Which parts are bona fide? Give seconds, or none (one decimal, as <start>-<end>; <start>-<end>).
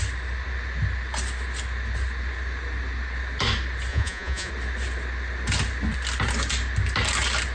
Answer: 0.0-3.9; 4.5-7.5